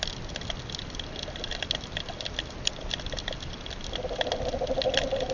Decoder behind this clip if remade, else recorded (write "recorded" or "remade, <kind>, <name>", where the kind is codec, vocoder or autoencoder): recorded